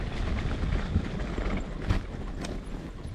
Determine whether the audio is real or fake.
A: real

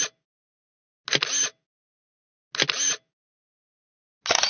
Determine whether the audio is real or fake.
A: real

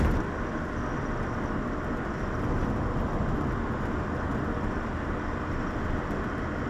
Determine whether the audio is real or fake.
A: real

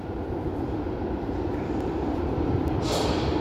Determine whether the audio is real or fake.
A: real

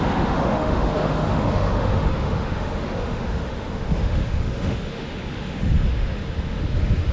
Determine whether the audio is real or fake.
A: fake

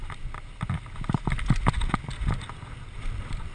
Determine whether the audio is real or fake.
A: real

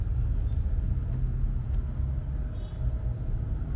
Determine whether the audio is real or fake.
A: real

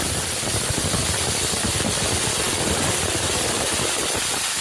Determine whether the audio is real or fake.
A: real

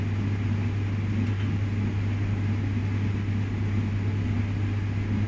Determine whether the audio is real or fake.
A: real